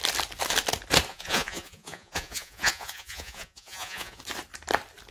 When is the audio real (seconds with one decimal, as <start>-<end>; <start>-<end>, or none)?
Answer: 0.0-1.1; 4.2-5.1